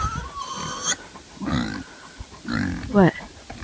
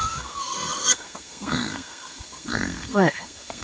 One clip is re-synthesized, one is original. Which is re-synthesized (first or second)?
second